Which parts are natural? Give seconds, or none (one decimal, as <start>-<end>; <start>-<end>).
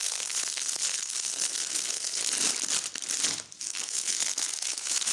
2.2-3.6